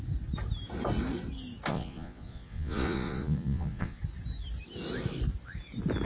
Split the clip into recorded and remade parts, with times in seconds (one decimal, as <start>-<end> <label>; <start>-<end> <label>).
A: 0.0-1.7 recorded; 1.7-4.0 remade; 4.0-6.1 recorded

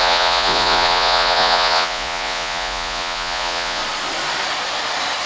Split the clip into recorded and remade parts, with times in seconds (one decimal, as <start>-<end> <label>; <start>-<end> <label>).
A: 0.0-3.8 remade; 3.8-5.3 recorded

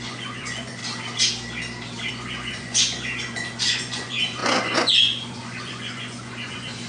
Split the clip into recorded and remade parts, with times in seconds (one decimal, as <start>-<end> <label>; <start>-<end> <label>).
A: 0.0-0.8 remade; 0.8-2.1 recorded; 2.1-6.9 remade

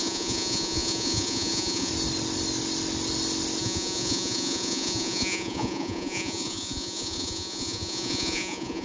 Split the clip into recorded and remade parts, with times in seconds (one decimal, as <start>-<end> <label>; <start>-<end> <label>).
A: 0.0-1.9 remade; 1.9-3.6 recorded; 3.6-8.8 remade

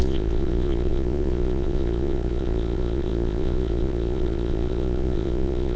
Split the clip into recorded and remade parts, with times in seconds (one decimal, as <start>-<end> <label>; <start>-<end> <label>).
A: 0.0-5.8 remade